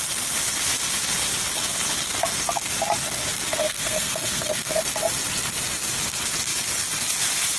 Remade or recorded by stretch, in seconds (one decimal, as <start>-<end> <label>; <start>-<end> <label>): 0.0-3.6 recorded; 3.6-4.8 remade; 4.8-7.6 recorded